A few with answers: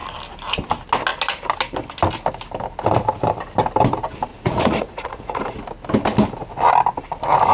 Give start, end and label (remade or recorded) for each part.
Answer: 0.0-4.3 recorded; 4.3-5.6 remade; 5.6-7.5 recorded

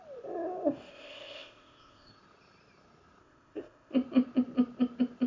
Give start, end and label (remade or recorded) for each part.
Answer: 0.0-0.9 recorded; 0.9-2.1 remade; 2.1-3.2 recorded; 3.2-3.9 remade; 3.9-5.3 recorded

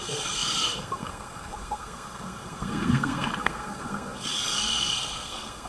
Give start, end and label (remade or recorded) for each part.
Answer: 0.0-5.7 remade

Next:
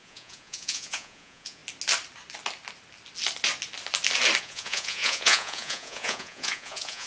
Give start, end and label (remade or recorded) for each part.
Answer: 0.0-1.6 remade; 1.6-4.4 recorded; 4.4-7.1 remade

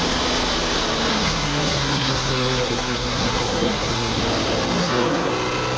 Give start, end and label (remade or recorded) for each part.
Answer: 0.0-1.1 recorded; 1.1-4.2 remade; 4.2-4.8 recorded; 4.8-5.3 remade; 5.3-5.8 recorded

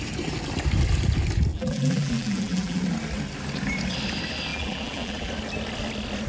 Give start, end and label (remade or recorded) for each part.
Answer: 0.0-1.5 recorded; 1.5-2.8 remade; 2.8-4.5 recorded; 4.5-5.3 remade; 5.3-6.3 recorded